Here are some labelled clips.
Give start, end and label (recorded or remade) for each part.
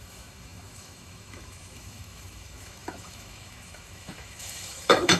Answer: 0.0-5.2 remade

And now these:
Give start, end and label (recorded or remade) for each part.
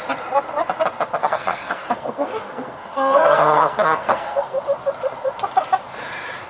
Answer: 0.0-1.2 recorded; 1.2-4.6 remade; 4.6-6.5 recorded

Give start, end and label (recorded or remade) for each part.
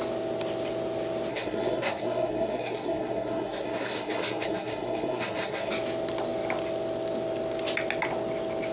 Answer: 0.0-1.3 recorded; 1.3-5.7 remade; 5.7-8.7 recorded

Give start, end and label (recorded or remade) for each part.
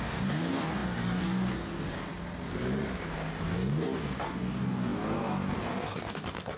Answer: 0.0-2.1 remade; 2.1-3.0 recorded; 3.0-6.6 remade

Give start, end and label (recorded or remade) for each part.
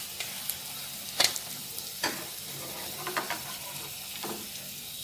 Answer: 0.0-0.8 recorded; 0.8-3.8 remade; 3.8-5.0 recorded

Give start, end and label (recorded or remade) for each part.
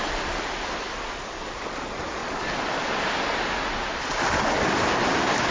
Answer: 0.0-5.5 recorded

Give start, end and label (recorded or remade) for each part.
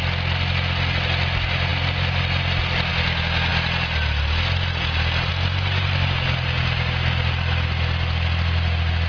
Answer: 0.0-9.1 recorded